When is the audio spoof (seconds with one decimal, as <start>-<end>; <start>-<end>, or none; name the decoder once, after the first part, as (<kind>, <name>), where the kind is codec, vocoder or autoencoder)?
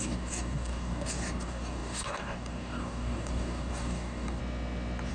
0.0-4.4 (codec, DAC)